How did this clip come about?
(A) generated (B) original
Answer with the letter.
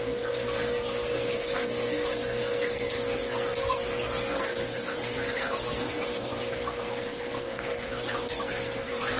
A